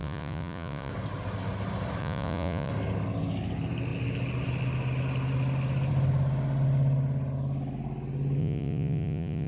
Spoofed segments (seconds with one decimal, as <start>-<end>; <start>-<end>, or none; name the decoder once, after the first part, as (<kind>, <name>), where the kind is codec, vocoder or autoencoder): 0.0-0.9 (vocoder, Vocos); 2.0-2.7; 8.4-9.5